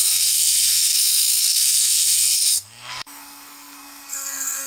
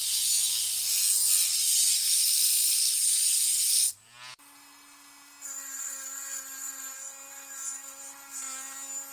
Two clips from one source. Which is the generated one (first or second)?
first